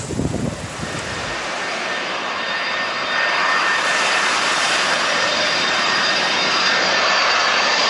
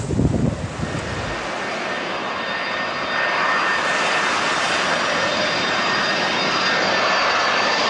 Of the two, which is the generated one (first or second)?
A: first